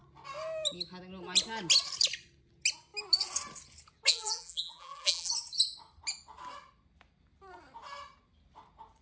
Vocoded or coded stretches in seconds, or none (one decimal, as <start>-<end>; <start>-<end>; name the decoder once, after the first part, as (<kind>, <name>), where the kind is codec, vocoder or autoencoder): 4.1-5.3 (vocoder, BigVGAN v2)